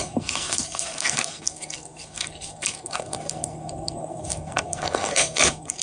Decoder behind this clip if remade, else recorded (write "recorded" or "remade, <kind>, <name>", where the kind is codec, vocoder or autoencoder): remade, codec, SNAC